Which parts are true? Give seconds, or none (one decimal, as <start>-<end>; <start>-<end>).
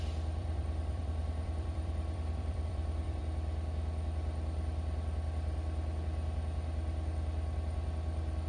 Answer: 0.0-0.4; 3.2-8.5